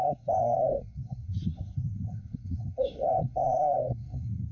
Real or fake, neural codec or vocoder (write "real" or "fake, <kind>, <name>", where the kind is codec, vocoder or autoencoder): fake, codec, SNAC